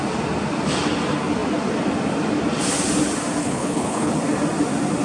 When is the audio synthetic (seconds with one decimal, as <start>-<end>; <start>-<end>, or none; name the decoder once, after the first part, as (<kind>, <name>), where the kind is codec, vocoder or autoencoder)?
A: 3.4-4.1 (codec, HILCodec)